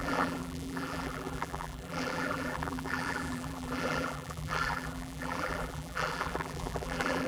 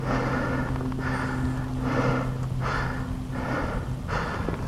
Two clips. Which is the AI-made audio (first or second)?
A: first